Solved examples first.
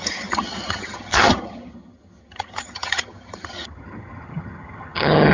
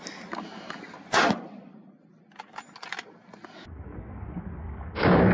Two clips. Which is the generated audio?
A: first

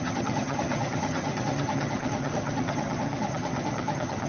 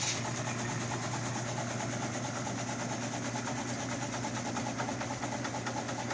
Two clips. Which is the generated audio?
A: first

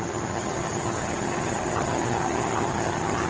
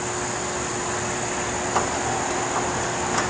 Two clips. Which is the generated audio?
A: first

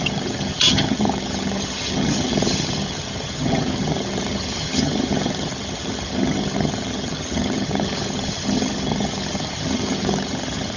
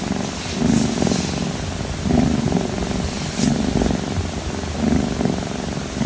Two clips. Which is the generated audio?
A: first